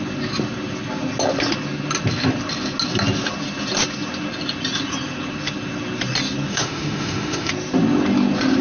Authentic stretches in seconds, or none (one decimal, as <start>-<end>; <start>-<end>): 0.0-6.5; 7.5-8.6